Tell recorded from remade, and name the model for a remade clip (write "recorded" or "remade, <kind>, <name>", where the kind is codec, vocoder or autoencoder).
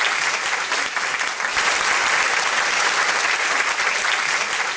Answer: recorded